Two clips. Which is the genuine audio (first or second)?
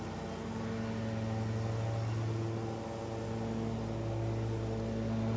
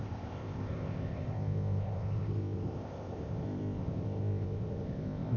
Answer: first